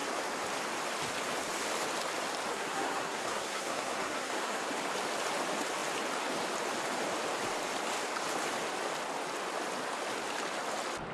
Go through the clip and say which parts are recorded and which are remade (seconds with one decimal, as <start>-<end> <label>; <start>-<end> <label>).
0.0-2.5 recorded; 2.5-4.6 remade; 4.6-11.1 recorded